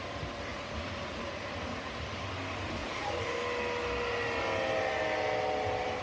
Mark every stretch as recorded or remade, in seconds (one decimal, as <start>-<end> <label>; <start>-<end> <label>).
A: 0.0-0.5 recorded; 0.5-1.9 remade; 1.9-2.8 recorded; 2.8-3.4 remade; 3.4-6.0 recorded